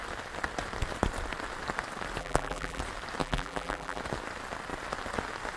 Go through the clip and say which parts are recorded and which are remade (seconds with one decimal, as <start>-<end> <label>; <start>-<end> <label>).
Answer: 0.0-2.2 recorded; 2.2-2.8 remade; 2.8-3.2 recorded; 3.2-4.0 remade; 4.0-5.6 recorded